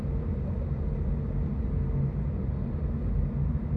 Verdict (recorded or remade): recorded